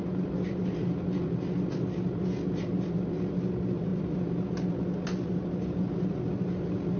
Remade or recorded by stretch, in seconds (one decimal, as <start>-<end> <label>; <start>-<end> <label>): 0.0-7.0 recorded